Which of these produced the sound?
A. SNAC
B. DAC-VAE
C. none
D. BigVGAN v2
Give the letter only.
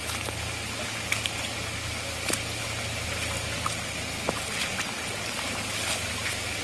C